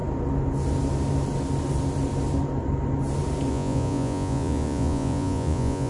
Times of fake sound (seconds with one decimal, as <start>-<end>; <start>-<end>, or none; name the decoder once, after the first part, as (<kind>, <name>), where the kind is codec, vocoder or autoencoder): 3.5-5.9 (vocoder, Vocos)